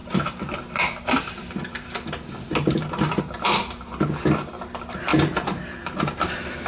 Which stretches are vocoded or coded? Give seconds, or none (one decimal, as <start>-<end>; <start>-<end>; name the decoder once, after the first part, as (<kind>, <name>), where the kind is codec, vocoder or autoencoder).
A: 0.0-3.9 (vocoder, BigVGAN v2); 4.5-5.1; 5.8-6.7

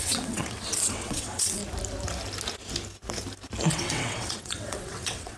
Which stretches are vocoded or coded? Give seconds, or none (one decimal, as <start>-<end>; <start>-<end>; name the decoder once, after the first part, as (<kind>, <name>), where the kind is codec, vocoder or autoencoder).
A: 0.0-1.6 (vocoder, WaveNeXt); 3.7-5.4

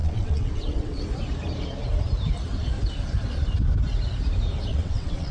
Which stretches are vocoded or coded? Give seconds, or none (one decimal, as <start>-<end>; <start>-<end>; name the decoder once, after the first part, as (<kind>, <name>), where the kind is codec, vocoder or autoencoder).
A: 0.0-1.0 (vocoder, WaveNeXt); 4.7-5.3

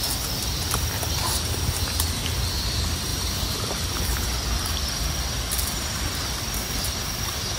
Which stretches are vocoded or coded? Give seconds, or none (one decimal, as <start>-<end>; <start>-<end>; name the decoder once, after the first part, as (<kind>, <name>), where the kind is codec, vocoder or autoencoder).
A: 3.1-4.0 (vocoder, BigVGAN v2)